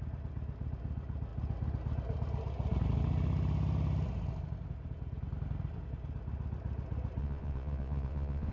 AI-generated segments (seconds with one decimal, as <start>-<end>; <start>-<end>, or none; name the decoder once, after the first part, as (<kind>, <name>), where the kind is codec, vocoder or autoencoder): 7.2-8.5 (vocoder, Vocos)